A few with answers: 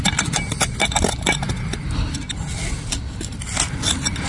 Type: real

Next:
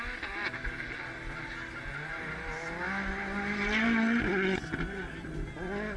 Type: real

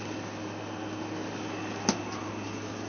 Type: real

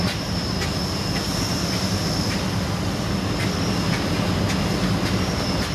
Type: real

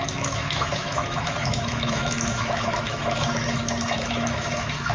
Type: fake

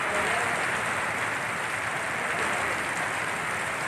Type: real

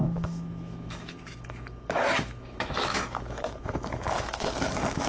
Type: fake